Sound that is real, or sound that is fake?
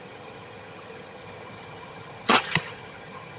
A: fake